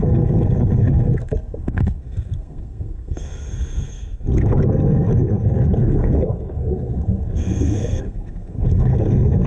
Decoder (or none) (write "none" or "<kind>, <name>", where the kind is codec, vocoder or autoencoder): codec, SNAC